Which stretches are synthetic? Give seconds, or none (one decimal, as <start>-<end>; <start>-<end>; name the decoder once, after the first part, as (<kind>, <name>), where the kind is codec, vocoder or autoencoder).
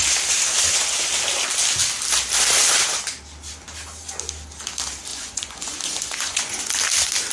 5.1-6.6 (vocoder, Vocos)